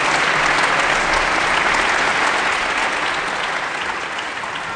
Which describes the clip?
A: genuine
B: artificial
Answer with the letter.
A